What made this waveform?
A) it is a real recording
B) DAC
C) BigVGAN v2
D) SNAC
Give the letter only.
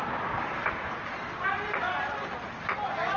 A